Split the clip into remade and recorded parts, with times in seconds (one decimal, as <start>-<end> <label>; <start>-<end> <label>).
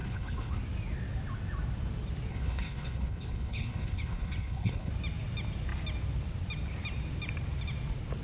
0.0-0.6 remade; 0.6-2.3 recorded; 2.3-4.9 remade; 4.9-8.2 recorded